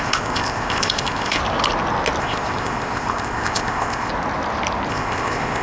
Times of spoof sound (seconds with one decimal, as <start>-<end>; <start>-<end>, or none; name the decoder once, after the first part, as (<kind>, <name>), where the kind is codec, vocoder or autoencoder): 0.0-1.4 (codec, ZipCodec); 2.2-4.1; 4.9-5.6

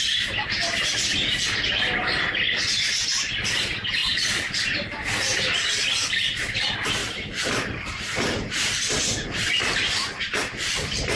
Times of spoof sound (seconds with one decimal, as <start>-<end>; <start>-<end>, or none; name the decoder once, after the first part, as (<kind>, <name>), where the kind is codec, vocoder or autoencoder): 7.0-11.2 (vocoder, BigVGAN v2)

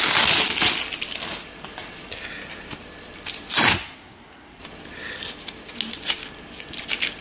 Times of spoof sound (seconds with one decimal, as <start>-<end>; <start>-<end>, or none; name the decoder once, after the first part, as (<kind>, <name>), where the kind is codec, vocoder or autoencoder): 3.7-4.6 (codec, SNAC)

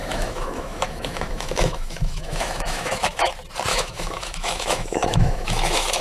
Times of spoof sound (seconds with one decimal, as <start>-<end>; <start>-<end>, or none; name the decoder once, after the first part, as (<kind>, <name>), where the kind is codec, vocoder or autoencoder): 0.0-3.3 (autoencoder, DAC-VAE); 3.7-6.0

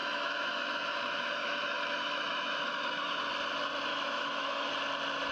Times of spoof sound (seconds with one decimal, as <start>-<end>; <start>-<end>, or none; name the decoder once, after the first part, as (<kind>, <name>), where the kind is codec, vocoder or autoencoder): 0.0-3.2 (autoencoder, DAC-VAE); 3.9-4.7

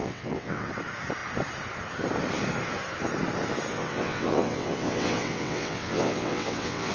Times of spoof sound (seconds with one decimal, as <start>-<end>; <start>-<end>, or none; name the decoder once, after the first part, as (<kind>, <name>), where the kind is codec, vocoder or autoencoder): 0.0-0.7 (vocoder, WaveNeXt); 3.7-6.9